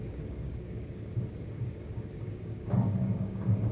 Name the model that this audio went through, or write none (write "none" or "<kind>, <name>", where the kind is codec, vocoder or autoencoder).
codec, DAC